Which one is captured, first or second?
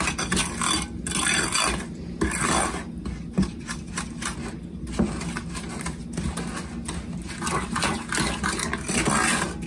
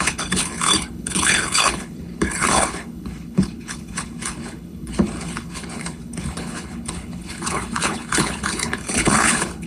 first